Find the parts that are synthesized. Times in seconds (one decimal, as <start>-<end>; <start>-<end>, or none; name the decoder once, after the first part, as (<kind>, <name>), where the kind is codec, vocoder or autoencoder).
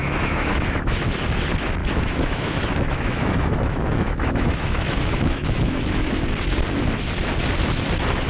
0.0-1.1 (autoencoder, DAC-VAE); 1.8-6.2